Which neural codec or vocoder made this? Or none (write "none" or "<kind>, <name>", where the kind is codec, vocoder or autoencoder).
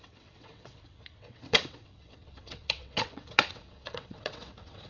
vocoder, WaveNeXt